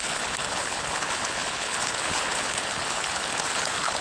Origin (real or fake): fake